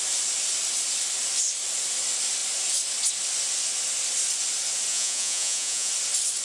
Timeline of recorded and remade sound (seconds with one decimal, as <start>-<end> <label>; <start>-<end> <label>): 0.0-4.9 recorded; 4.9-5.9 remade; 5.9-6.4 recorded